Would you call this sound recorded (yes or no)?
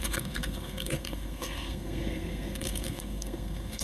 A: no